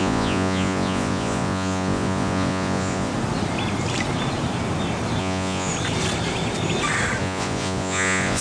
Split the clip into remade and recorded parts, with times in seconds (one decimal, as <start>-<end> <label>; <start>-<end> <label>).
0.0-3.1 remade; 3.1-5.2 recorded; 5.2-5.7 remade; 5.7-7.2 recorded; 7.2-8.4 remade